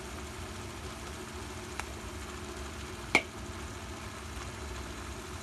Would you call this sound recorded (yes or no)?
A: yes